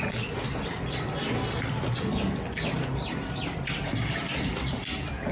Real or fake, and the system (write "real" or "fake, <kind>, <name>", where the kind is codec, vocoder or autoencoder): real